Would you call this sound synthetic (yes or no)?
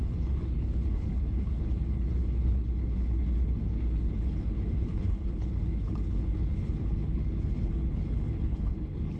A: yes